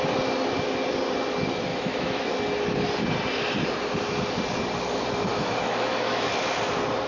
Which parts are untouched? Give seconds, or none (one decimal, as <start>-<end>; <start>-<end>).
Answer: 0.0-1.7; 2.3-5.3; 6.3-7.1